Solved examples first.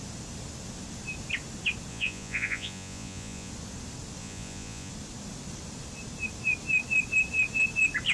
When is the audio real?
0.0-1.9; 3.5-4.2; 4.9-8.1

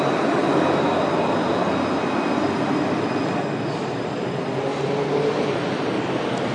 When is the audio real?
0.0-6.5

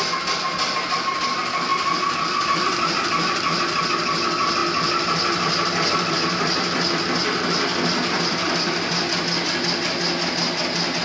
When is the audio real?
0.0-11.0

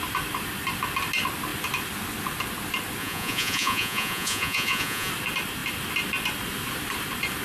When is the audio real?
0.0-3.0; 5.1-7.4

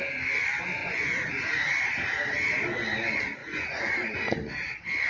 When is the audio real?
0.0-0.8; 1.3-3.4; 4.5-5.1

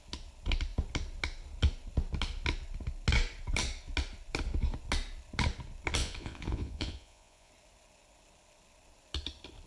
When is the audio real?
0.0-6.0; 7.5-9.7